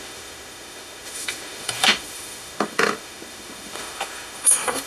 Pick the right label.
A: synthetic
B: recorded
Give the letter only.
A